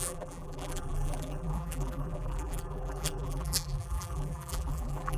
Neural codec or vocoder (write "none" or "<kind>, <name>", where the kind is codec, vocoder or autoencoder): vocoder, BigVGAN v2